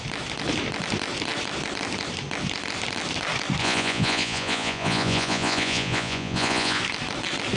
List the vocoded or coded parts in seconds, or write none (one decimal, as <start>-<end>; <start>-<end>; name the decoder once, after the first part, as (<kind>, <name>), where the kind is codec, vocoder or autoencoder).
3.6-6.8 (vocoder, Vocos)